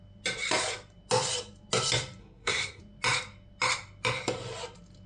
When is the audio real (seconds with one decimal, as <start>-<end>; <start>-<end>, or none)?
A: 0.0-2.2; 2.8-5.1